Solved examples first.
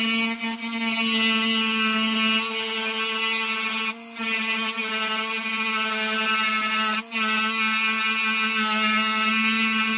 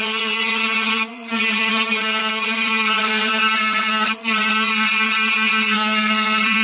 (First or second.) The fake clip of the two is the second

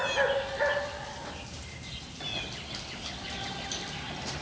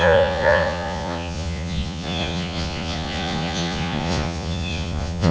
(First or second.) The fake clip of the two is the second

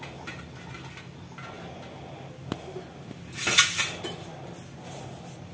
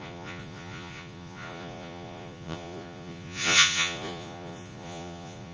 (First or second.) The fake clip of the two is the second